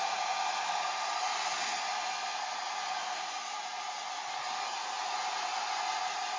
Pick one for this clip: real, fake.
real